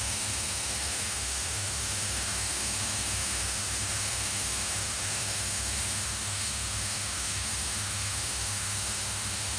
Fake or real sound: fake